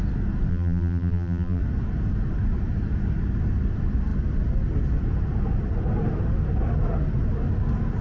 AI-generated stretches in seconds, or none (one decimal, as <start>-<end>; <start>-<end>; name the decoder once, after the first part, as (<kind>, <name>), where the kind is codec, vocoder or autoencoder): 0.5-1.6 (vocoder, BigVGAN v2)